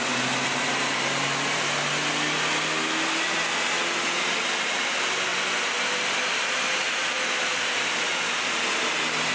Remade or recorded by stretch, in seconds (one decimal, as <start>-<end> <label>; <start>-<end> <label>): 0.0-9.3 recorded